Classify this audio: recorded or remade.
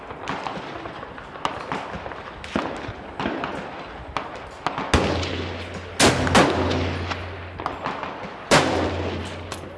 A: recorded